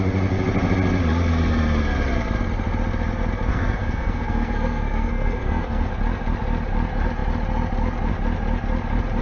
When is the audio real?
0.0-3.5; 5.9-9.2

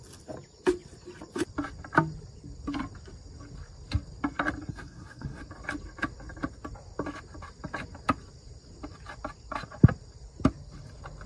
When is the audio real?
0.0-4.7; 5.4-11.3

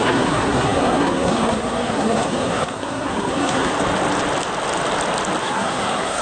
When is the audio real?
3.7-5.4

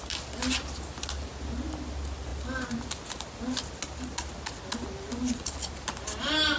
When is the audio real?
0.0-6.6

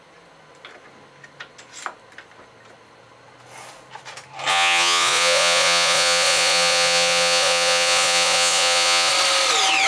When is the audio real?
0.0-4.5; 9.1-9.9